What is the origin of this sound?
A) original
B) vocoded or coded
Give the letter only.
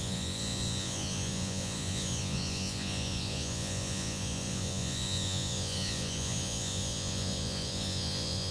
B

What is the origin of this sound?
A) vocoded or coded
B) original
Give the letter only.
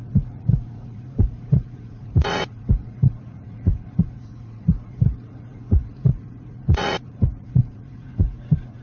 A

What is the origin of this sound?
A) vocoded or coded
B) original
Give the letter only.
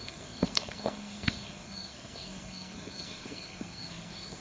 A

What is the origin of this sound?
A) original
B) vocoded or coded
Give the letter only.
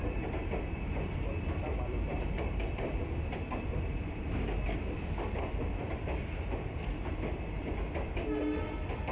A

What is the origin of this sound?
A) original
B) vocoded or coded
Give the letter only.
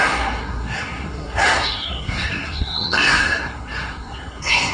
B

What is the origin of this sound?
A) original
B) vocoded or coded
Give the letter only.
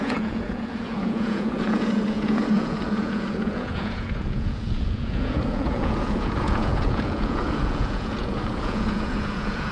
B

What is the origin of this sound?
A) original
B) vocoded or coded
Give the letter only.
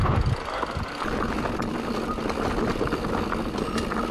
A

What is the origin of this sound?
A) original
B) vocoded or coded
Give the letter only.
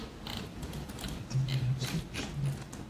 A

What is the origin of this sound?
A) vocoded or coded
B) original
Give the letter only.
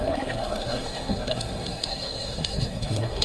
A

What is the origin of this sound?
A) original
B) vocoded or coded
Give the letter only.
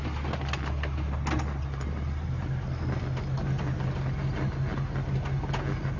A